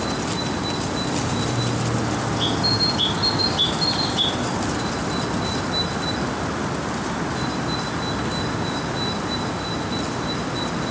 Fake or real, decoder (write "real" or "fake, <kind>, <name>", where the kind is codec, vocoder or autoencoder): real